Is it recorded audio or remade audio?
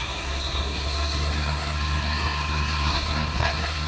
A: remade